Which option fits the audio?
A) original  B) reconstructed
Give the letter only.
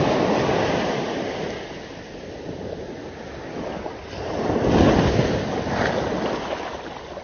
A